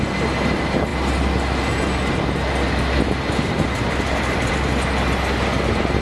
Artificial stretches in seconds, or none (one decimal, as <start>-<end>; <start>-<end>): none